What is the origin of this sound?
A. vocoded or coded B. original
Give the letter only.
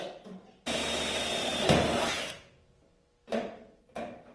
B